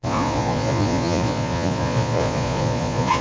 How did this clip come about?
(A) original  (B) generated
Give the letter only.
B